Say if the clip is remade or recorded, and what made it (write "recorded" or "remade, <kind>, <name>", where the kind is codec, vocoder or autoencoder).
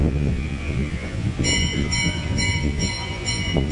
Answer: remade, vocoder, Vocos